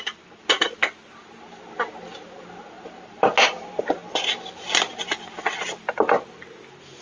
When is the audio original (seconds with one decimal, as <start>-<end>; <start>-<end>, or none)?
0.0-7.0